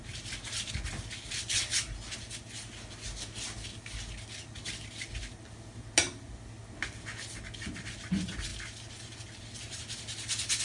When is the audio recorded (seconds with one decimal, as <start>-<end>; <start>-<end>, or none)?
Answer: 0.0-10.6